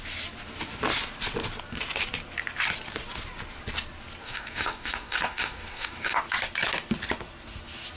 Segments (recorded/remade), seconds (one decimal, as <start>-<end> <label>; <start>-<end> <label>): 0.0-4.2 recorded; 4.2-6.2 remade; 6.2-8.0 recorded